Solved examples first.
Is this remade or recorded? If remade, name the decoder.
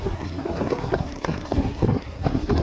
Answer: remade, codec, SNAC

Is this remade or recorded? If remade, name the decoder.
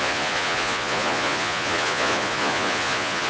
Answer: remade, vocoder, Vocos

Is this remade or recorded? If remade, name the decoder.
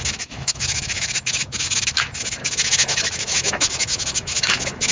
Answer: remade, autoencoder, DAC-VAE